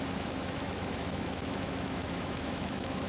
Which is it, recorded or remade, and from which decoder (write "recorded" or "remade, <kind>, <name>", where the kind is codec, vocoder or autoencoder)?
remade, autoencoder, DAC-VAE